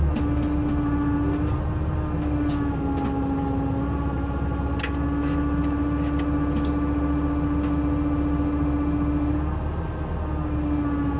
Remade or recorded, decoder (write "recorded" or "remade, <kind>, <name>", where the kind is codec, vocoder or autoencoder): recorded